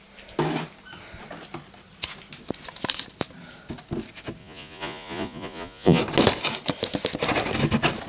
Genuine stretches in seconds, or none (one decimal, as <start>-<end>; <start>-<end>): 0.0-4.4; 6.0-8.1